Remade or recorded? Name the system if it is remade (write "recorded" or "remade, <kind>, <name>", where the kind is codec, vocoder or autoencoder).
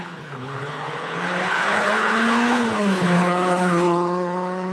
remade, codec, HILCodec